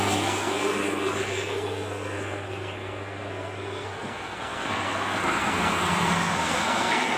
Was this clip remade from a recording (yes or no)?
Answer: yes